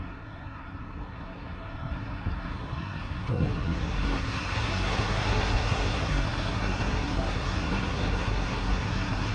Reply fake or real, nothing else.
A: fake